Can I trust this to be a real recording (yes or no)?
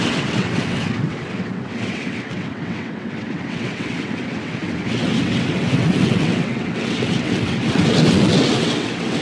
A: no